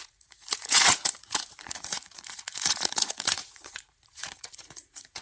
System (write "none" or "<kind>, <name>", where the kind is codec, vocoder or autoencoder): vocoder, Vocos